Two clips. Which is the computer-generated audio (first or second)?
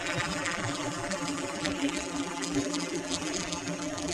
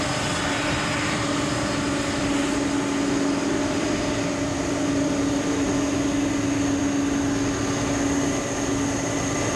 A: first